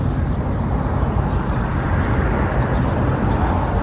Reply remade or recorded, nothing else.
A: recorded